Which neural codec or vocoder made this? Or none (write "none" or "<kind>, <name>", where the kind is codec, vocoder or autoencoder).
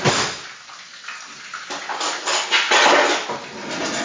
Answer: none